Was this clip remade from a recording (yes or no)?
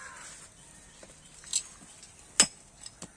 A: no